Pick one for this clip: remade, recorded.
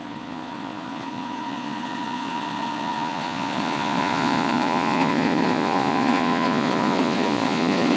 remade